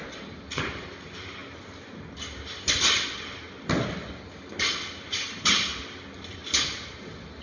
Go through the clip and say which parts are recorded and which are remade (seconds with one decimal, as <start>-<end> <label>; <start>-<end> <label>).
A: 0.0-7.4 recorded